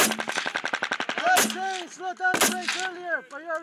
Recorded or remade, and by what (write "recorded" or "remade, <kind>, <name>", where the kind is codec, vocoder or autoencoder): recorded